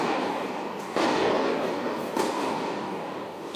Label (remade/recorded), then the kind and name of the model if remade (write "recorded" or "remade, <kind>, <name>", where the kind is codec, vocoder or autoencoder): remade, codec, DAC